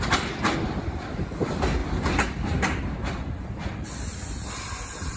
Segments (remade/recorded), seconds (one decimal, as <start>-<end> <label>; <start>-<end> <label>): 0.0-5.2 recorded